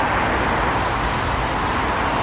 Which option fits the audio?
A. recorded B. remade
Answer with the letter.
A